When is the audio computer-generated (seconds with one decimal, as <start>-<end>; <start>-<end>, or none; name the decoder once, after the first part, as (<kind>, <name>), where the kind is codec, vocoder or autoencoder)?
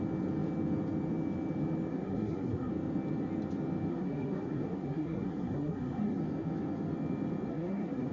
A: 1.9-2.7 (codec, SNAC); 3.9-6.2; 7.5-8.1